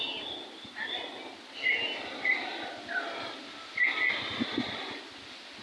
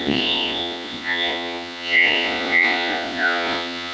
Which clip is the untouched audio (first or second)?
first